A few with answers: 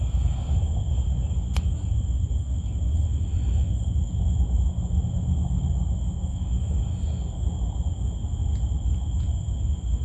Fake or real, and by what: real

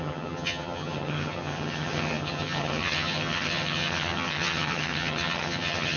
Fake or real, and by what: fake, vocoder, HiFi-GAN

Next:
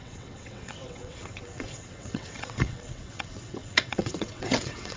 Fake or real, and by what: fake, vocoder, WaveNeXt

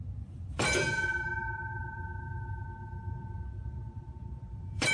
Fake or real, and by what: fake, vocoder, BigVGAN v2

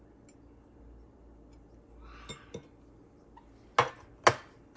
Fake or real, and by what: real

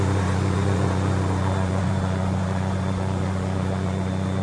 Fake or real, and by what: fake, vocoder, Vocos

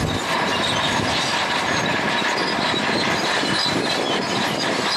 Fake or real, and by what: real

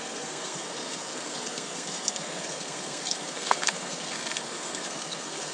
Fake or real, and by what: fake, codec, SNAC